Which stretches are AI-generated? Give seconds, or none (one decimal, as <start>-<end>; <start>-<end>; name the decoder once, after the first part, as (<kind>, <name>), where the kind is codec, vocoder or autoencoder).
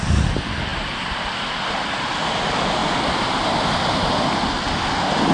none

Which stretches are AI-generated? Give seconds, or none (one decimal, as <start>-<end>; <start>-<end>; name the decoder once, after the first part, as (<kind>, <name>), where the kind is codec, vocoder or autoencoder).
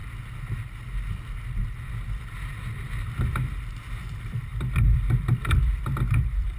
4.0-6.6 (vocoder, BigVGAN v2)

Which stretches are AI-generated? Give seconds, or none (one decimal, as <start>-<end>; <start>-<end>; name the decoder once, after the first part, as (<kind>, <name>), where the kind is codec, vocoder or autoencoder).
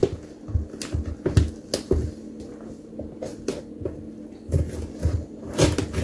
none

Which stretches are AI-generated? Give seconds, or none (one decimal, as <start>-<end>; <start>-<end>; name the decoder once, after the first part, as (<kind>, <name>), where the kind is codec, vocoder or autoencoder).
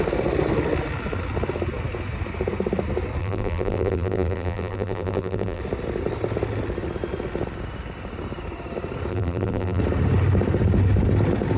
3.2-5.6 (vocoder, BigVGAN v2); 9.1-9.8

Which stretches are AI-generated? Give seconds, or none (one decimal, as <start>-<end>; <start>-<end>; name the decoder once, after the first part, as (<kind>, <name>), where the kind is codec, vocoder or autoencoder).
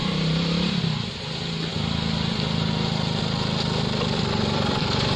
0.0-1.7 (vocoder, BigVGAN v2); 4.3-5.2